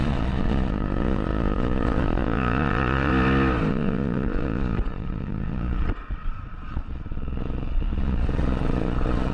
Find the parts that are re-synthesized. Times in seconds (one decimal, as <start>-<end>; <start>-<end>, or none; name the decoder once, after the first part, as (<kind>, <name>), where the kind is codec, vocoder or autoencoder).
0.0-3.1 (vocoder, Vocos); 3.7-9.3